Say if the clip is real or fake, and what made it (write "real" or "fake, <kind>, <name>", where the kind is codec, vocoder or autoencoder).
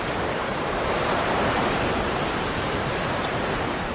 fake, vocoder, BigVGAN v2